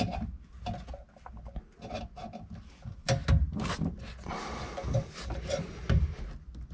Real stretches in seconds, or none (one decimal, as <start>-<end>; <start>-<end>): 0.0-6.7